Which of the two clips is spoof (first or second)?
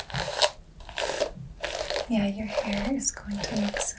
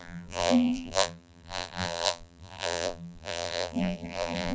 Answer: second